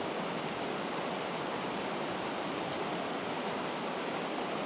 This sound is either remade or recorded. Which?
recorded